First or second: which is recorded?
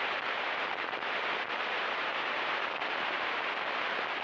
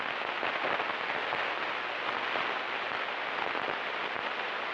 second